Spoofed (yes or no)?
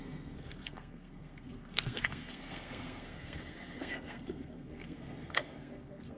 yes